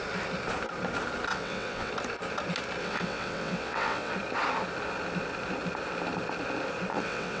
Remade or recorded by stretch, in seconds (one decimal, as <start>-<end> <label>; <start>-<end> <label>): 0.0-1.3 recorded; 1.3-1.9 remade; 1.9-2.8 recorded; 2.8-4.1 remade; 4.1-6.9 recorded; 6.9-7.4 remade